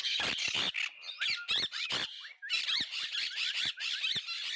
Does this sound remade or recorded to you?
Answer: recorded